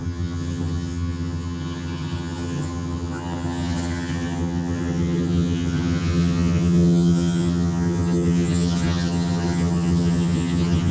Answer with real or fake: fake